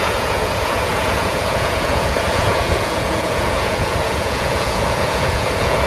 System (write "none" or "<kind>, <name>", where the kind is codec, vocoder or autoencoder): vocoder, Vocos